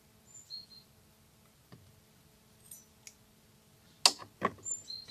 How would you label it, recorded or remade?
recorded